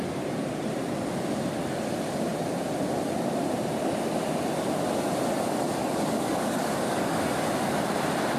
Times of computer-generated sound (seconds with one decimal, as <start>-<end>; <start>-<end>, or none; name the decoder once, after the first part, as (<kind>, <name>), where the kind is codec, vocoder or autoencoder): 5.8-7.2 (codec, DAC)